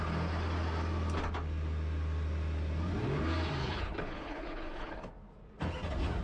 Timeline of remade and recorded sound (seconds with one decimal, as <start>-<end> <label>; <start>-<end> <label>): 0.0-3.6 recorded; 3.6-5.1 remade; 5.1-6.2 recorded